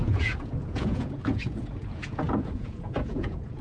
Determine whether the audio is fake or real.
fake